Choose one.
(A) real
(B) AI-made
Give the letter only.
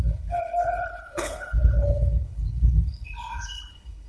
B